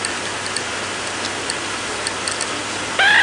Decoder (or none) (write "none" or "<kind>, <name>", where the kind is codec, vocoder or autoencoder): none